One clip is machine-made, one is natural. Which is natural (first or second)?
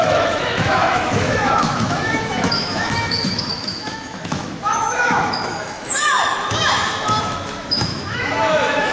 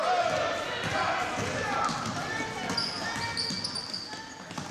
second